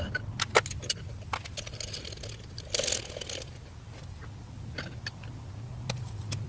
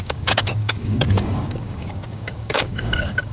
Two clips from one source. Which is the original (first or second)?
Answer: first